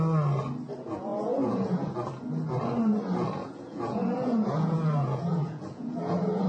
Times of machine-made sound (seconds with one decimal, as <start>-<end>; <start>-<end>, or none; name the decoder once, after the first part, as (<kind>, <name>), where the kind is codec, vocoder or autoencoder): 1.1-1.9 (vocoder, Vocos); 3.4-6.5